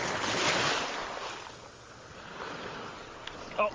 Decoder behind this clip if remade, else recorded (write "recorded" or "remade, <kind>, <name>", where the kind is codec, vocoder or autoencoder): recorded